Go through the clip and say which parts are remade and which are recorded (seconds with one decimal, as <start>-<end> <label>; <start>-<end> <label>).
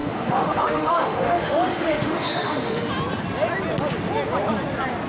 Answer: 0.0-2.9 remade; 2.9-5.1 recorded